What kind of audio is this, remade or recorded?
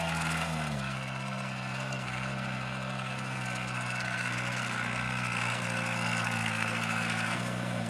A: remade